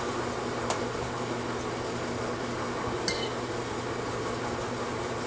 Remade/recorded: recorded